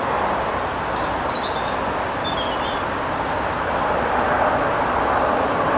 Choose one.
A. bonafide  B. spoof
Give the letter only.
A